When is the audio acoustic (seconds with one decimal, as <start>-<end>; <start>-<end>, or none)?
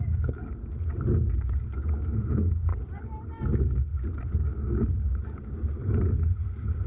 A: 0.6-1.4; 2.7-3.4; 3.9-4.4